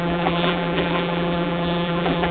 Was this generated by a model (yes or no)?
yes